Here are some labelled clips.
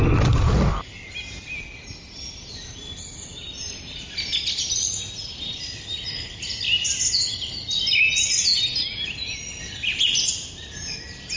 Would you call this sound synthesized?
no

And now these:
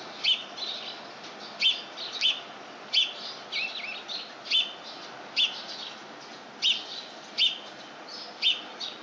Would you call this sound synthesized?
no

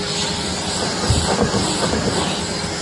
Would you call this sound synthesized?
no